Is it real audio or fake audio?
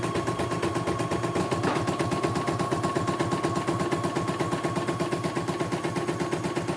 real